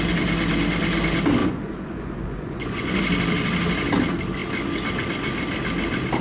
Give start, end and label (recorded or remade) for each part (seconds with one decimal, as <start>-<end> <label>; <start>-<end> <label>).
0.0-1.4 recorded; 1.4-2.9 remade; 2.9-6.2 recorded